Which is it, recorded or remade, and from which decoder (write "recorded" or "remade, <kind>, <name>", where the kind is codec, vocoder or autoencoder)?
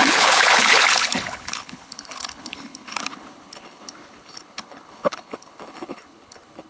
remade, codec, HILCodec